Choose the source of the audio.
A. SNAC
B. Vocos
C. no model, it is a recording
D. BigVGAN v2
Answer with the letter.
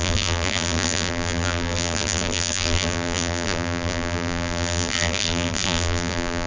D